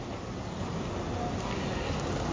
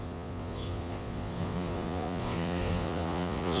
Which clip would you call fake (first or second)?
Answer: second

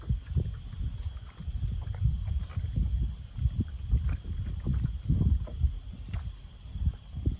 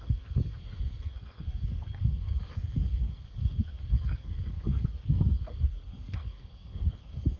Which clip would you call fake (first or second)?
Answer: second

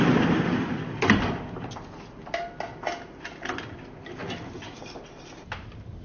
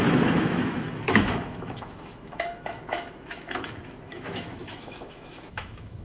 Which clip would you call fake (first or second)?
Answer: second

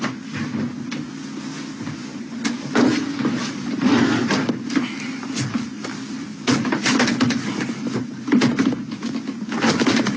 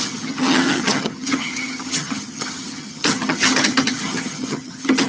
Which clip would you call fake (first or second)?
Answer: second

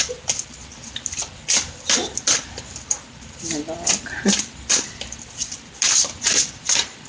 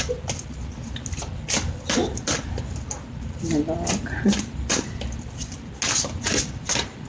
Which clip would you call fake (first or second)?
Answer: first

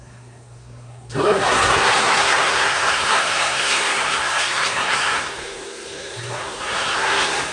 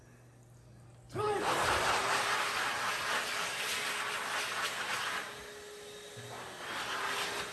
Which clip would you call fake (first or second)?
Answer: first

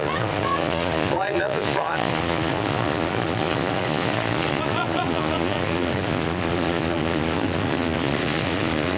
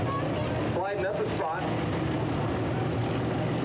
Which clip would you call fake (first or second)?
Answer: first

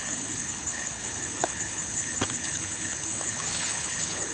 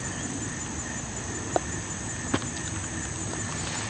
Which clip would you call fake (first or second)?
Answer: first